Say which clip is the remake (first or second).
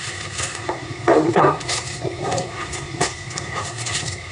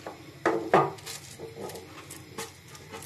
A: first